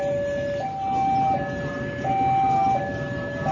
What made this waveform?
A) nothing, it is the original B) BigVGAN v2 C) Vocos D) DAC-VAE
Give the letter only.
A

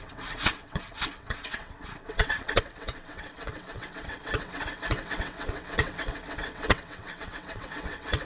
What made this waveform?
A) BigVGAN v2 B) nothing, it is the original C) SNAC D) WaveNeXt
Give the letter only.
D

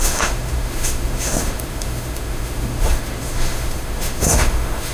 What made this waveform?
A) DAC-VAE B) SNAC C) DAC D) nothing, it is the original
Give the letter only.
A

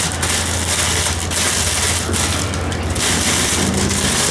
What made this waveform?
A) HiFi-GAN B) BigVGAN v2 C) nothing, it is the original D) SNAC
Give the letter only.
C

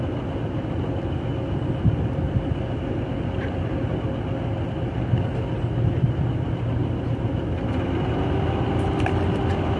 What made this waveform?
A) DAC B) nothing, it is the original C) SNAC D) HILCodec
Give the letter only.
B